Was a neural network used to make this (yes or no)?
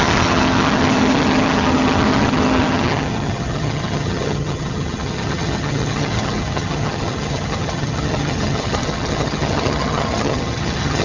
yes